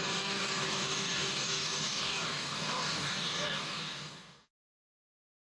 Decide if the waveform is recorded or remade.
remade